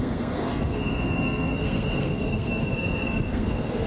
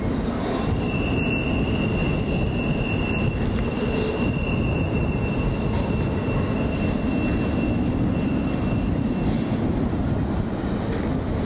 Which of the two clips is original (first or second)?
second